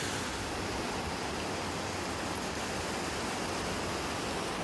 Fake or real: real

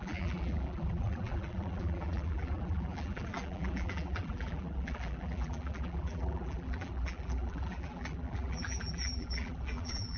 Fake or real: fake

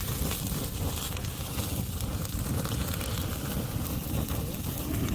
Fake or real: real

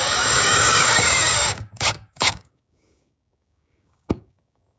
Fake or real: fake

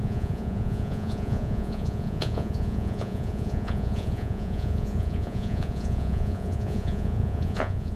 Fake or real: fake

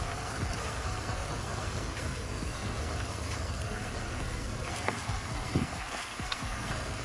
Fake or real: fake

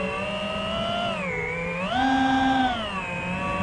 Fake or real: real